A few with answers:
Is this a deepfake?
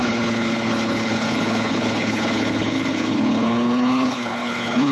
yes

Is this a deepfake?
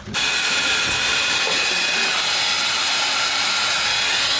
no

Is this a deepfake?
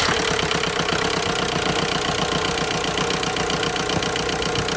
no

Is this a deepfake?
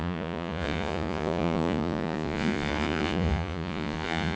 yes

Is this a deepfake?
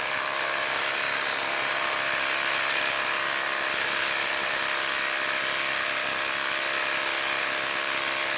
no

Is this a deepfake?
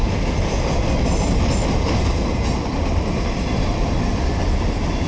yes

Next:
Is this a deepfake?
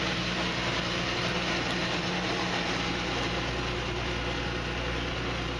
no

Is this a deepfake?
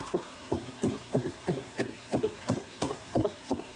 yes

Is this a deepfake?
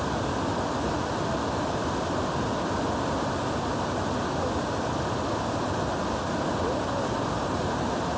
no